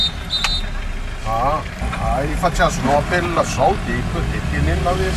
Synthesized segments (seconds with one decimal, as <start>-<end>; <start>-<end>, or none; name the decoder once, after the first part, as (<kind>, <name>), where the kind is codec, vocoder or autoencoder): 1.2-3.5 (vocoder, BigVGAN v2)